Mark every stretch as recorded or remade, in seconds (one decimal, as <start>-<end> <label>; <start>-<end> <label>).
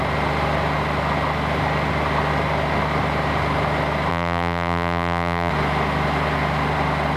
0.0-4.1 recorded; 4.1-5.5 remade; 5.5-7.2 recorded